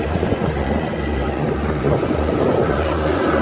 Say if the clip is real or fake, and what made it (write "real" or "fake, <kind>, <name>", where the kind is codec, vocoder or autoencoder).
fake, vocoder, Vocos